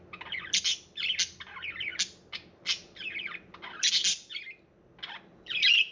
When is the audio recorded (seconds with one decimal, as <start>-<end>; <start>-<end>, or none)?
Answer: 0.0-5.9